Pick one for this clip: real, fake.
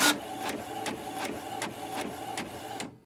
real